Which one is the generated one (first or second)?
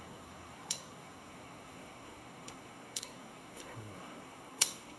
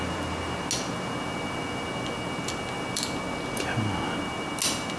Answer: first